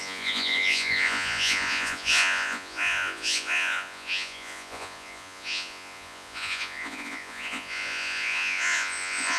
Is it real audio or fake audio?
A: fake